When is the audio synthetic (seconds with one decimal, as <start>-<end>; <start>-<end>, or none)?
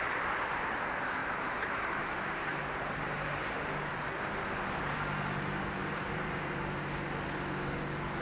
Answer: 1.2-3.0; 5.8-6.5